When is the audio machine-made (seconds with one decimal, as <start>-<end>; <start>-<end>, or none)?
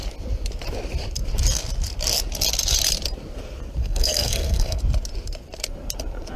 3.8-4.8